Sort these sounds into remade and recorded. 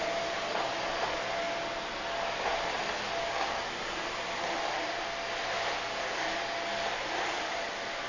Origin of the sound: recorded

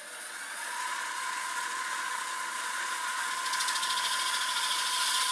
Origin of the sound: remade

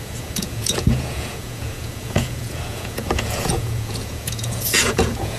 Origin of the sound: remade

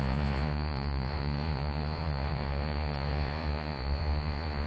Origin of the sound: remade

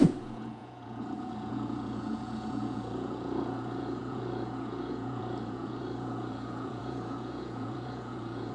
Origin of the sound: remade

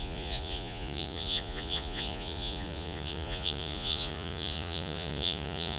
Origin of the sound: remade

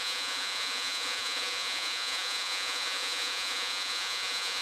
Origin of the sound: remade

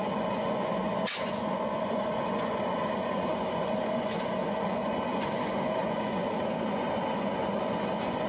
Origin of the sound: remade